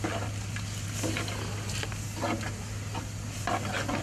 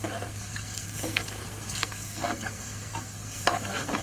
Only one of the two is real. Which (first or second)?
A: first